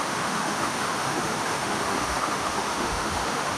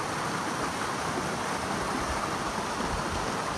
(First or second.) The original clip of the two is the second